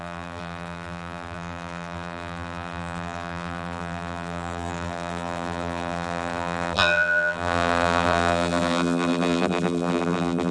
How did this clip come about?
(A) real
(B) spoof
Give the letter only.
B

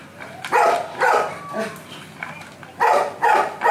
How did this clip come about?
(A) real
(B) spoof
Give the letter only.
A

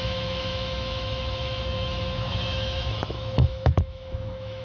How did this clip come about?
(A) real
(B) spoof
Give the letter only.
B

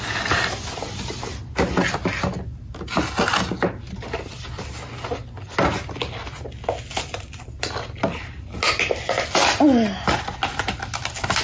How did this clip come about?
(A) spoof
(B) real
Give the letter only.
B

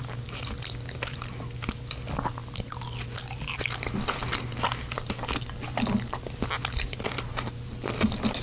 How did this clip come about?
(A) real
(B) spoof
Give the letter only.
A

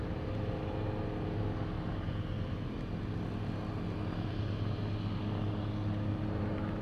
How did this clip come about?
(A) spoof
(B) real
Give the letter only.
B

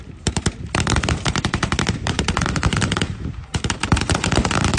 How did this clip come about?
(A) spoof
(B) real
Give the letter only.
A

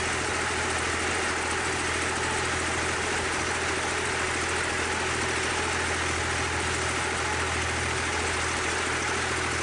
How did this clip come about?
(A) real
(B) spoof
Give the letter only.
A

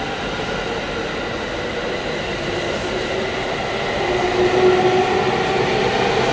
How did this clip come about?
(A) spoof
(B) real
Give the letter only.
B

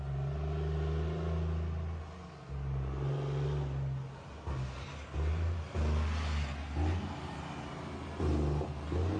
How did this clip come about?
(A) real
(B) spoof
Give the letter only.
A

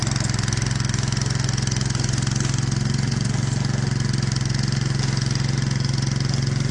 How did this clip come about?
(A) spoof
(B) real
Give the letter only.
B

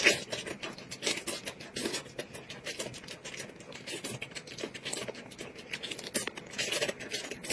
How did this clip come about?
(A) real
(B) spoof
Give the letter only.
A